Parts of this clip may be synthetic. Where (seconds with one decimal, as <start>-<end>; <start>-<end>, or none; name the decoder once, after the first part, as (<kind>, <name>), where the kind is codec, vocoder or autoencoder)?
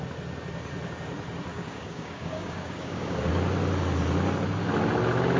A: 1.5-3.3 (codec, DAC)